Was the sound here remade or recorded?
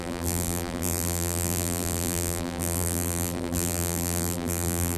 remade